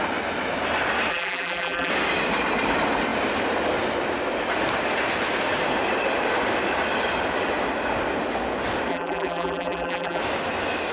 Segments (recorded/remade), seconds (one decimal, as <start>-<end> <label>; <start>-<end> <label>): 0.0-1.1 recorded; 1.1-1.9 remade; 1.9-8.9 recorded; 8.9-10.2 remade; 10.2-10.9 recorded